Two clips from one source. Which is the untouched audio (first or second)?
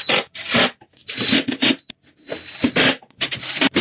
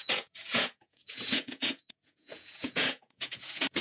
first